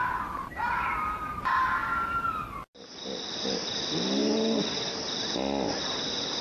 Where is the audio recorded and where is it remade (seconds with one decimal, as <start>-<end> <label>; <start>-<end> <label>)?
0.0-1.8 recorded; 1.8-2.5 remade; 2.5-6.4 recorded